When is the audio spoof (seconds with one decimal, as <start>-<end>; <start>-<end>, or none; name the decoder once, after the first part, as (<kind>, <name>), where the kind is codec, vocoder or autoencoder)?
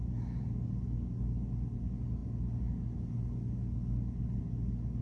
none